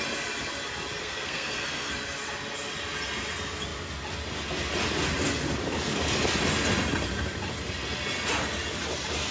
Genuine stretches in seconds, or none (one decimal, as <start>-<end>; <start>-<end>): 0.0-1.0; 1.9-9.3